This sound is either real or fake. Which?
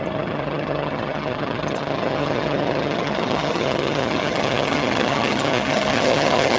fake